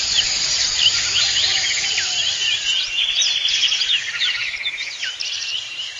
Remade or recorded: remade